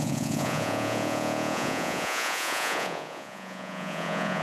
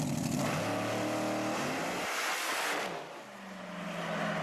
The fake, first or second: first